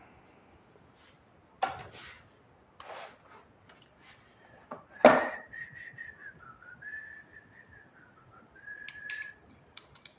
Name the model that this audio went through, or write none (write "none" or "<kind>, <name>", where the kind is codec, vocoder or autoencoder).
none